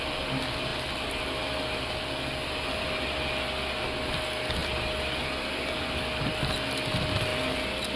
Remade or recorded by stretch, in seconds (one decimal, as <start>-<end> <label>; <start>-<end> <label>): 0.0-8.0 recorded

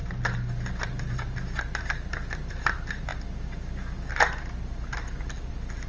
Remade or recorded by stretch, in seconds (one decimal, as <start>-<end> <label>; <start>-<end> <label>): 0.0-5.9 recorded

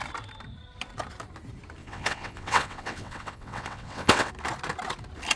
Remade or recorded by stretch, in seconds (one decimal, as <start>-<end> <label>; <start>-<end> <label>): 0.0-1.8 recorded; 1.8-4.3 remade; 4.3-5.4 recorded

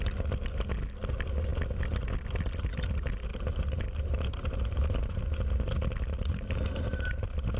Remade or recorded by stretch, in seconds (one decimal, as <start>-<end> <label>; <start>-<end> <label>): 0.0-3.3 recorded; 3.3-5.2 remade; 5.2-6.3 recorded; 6.3-7.1 remade; 7.1-7.6 recorded

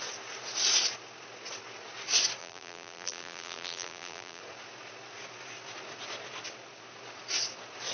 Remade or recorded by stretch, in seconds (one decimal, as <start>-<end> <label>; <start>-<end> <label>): 0.0-2.4 recorded; 2.4-4.4 remade; 4.4-7.9 recorded

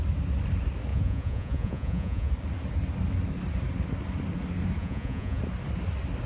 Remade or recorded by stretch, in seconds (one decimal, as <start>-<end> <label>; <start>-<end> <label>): 0.0-0.9 recorded; 0.9-2.3 remade; 2.3-4.8 recorded; 4.8-5.4 remade; 5.4-6.3 recorded